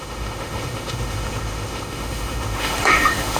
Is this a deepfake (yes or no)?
yes